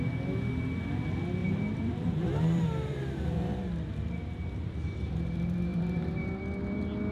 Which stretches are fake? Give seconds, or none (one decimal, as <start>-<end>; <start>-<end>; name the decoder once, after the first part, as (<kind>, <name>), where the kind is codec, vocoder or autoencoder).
1.4-5.1 (vocoder, BigVGAN v2); 5.7-6.4